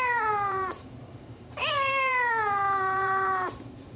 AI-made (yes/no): yes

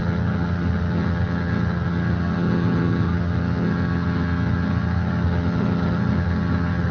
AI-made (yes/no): yes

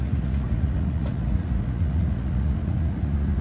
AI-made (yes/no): yes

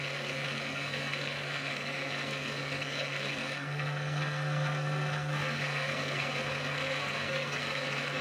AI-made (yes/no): yes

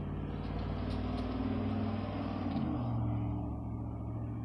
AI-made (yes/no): no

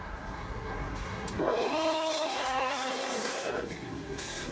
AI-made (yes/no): yes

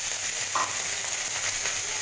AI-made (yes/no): no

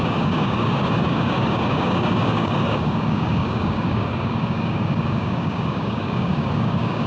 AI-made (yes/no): yes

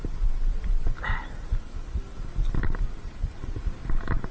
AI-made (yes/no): no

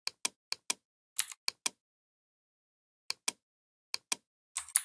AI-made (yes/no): no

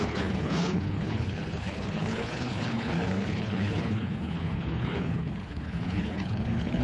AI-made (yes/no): yes